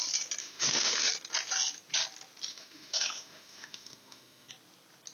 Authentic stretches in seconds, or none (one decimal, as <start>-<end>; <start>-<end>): 0.0-0.4; 1.1-2.5; 4.5-5.1